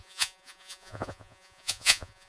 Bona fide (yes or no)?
no